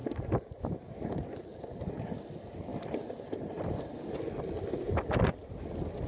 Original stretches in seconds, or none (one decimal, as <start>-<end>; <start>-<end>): 0.0-6.1